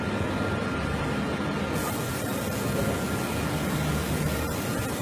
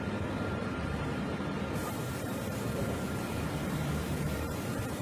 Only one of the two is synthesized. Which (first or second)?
second